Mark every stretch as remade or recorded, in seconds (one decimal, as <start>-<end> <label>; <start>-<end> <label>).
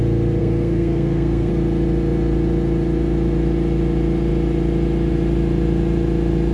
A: 0.0-0.4 recorded; 0.4-1.5 remade; 1.5-6.5 recorded